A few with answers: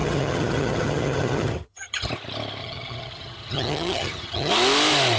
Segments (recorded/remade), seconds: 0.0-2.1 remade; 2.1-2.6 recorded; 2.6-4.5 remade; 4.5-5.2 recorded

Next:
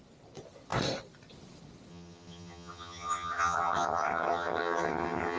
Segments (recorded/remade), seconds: 0.0-1.9 recorded; 1.9-5.4 remade

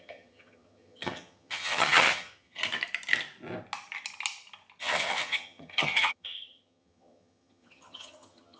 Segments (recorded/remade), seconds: 0.0-2.6 remade; 2.6-4.8 recorded; 4.8-8.6 remade

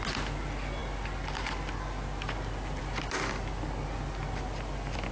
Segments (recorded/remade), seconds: 0.0-5.1 recorded